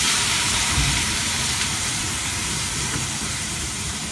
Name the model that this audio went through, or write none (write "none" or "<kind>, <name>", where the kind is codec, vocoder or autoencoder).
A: vocoder, BigVGAN v2